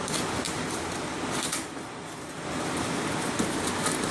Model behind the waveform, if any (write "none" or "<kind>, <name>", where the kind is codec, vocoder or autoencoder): none